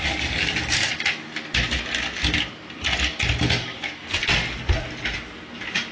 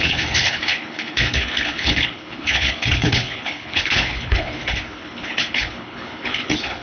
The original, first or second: first